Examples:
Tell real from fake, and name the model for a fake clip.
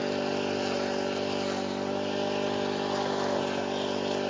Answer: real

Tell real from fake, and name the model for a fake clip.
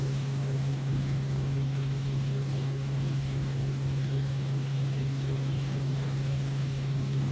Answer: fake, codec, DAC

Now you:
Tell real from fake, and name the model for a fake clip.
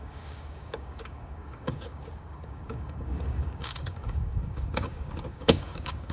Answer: fake, codec, DAC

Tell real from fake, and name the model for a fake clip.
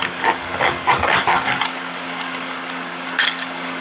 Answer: fake, codec, DAC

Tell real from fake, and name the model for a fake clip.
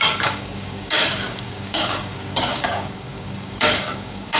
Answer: fake, codec, DAC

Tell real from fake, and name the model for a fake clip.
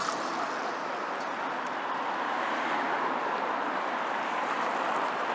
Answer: real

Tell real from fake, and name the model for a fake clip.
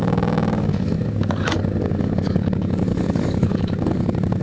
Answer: fake, codec, DAC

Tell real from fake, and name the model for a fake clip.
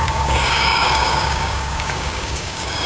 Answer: fake, codec, DAC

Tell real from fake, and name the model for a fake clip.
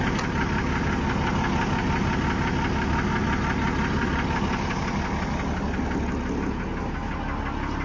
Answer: real